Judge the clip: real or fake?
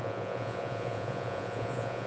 fake